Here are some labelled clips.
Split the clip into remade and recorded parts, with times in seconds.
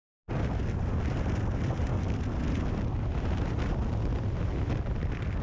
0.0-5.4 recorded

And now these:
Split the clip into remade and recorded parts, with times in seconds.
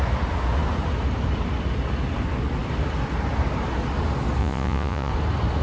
0.0-4.4 recorded; 4.4-5.1 remade; 5.1-5.6 recorded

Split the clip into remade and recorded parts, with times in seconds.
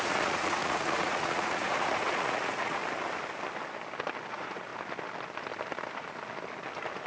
0.0-2.8 remade; 2.8-4.3 recorded; 4.3-4.7 remade; 4.7-7.1 recorded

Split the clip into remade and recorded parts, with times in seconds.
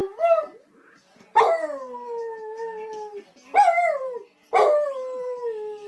0.0-5.9 recorded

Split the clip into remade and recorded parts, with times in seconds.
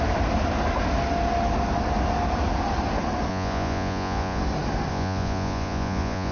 0.0-3.3 recorded; 3.3-4.4 remade; 4.4-4.9 recorded; 4.9-6.3 remade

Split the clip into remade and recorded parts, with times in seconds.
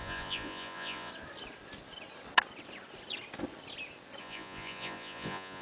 0.0-1.1 remade; 1.1-4.2 recorded; 4.2-5.6 remade